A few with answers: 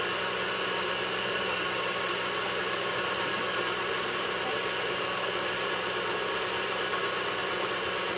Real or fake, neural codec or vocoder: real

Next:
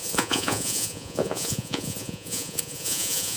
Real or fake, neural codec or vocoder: fake, vocoder, Vocos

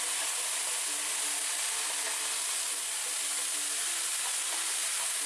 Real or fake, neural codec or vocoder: real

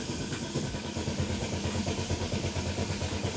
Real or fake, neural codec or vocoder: fake, codec, DAC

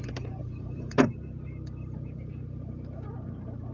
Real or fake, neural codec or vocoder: fake, vocoder, BigVGAN v2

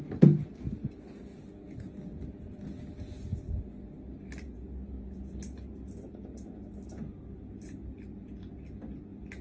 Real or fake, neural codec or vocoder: real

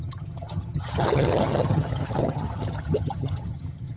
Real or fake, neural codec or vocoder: fake, vocoder, HiFi-GAN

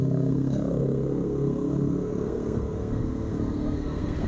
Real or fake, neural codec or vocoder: fake, codec, SNAC